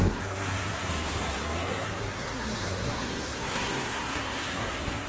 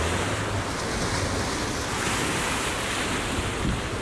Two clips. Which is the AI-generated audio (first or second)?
first